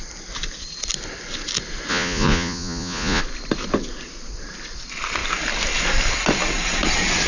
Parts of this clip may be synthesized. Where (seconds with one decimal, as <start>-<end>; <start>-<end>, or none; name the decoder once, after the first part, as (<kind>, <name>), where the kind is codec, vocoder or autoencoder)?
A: 1.9-3.2 (vocoder, Vocos)